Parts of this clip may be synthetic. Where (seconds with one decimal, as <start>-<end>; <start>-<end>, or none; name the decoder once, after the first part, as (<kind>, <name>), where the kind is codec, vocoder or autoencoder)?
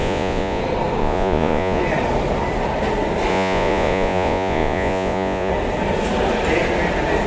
0.0-0.6 (vocoder, Vocos); 1.0-1.8; 3.3-5.5